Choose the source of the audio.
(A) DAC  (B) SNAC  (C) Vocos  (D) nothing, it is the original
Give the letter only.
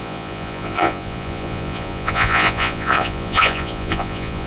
C